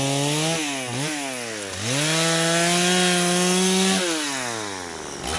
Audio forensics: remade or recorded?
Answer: recorded